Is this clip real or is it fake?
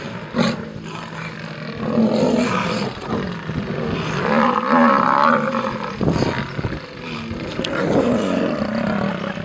real